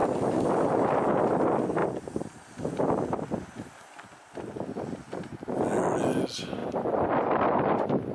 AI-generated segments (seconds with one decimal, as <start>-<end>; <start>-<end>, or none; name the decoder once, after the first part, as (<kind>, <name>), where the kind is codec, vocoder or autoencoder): none